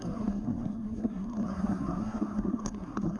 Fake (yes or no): yes